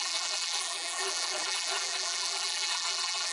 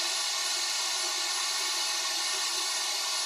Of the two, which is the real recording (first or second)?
second